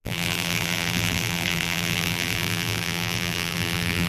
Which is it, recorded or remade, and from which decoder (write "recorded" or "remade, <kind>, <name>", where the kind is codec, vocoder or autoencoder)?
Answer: remade, vocoder, BigVGAN v2